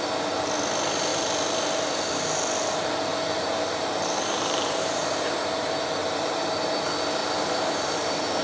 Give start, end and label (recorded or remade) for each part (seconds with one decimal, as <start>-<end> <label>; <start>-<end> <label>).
0.0-3.1 recorded; 3.1-5.0 remade; 5.0-6.0 recorded; 6.0-6.7 remade; 6.7-7.2 recorded; 7.2-8.4 remade

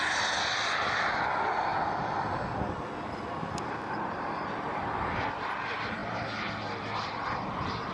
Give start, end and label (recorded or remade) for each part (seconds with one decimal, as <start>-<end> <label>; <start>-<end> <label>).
0.0-7.9 recorded

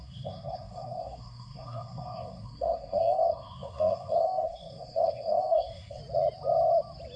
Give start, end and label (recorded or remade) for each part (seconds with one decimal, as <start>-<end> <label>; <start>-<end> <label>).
0.0-6.0 remade; 6.0-7.2 recorded

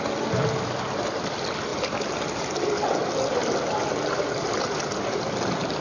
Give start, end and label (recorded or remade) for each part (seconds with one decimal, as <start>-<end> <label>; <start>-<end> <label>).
0.0-5.8 recorded

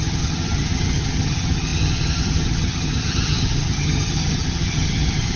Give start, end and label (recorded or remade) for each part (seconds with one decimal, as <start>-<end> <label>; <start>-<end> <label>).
0.0-5.4 remade

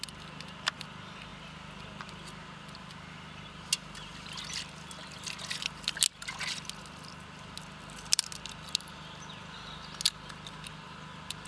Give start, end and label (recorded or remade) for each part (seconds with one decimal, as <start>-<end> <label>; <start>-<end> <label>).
0.0-11.5 recorded

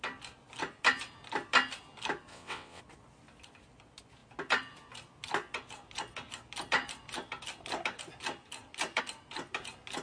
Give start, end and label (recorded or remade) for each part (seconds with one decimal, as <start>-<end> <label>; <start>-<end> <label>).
0.0-2.3 recorded; 2.3-2.8 remade; 2.8-10.0 recorded